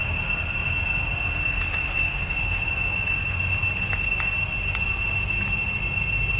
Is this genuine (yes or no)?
yes